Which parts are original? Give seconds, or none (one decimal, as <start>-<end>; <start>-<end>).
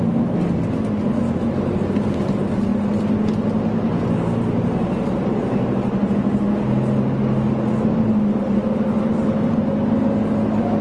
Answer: 0.0-10.8